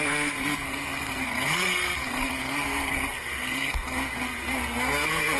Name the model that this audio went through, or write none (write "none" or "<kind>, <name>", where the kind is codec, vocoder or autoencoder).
codec, SNAC